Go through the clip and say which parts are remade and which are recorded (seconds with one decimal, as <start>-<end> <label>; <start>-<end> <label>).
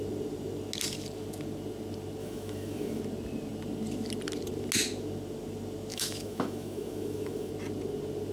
0.0-2.2 recorded; 2.2-3.0 remade; 3.0-5.9 recorded; 5.9-7.5 remade; 7.5-8.3 recorded